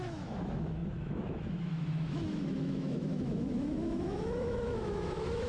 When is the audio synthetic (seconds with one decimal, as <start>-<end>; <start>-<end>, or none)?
0.0-5.5